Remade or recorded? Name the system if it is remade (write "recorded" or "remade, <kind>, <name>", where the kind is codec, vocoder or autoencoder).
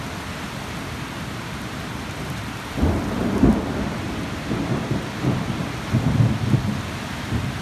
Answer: recorded